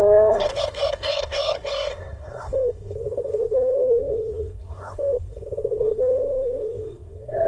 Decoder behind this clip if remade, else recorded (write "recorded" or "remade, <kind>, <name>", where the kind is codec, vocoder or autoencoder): remade, codec, SNAC